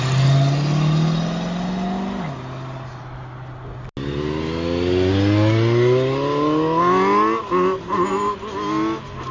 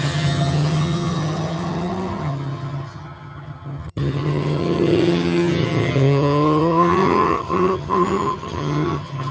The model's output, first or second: second